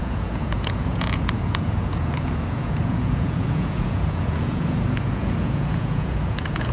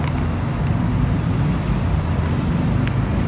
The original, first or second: second